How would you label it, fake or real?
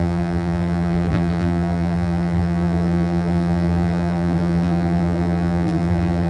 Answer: fake